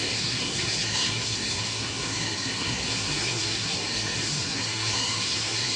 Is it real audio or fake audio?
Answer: fake